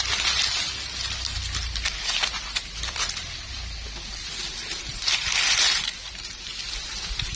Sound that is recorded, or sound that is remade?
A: recorded